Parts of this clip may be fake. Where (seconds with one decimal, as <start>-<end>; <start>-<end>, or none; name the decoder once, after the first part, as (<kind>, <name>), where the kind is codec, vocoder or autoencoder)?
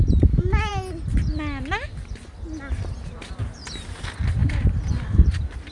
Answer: 4.4-5.3 (vocoder, BigVGAN v2)